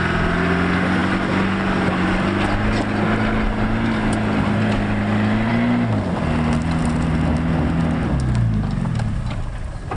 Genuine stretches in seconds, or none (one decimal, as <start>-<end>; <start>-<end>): 0.0-10.0